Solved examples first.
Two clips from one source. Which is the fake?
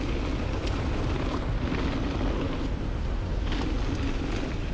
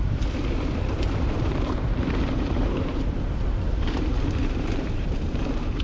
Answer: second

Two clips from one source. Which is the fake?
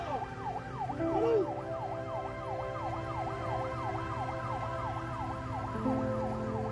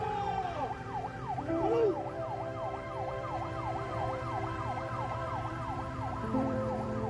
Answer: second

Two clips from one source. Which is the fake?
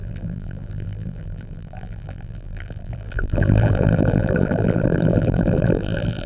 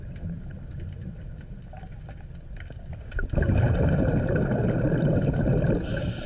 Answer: first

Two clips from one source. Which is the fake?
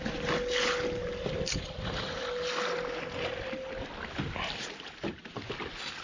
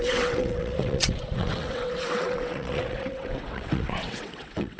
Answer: second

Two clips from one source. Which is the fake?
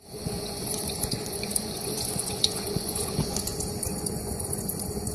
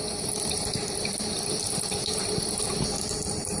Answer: first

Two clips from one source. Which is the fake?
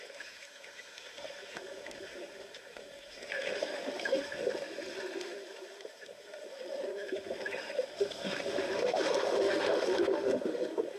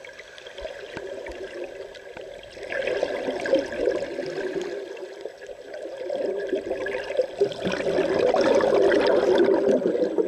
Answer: first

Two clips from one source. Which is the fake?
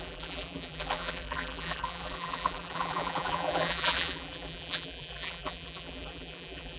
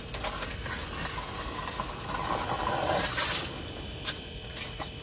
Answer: first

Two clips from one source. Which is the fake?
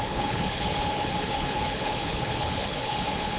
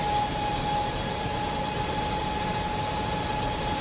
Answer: first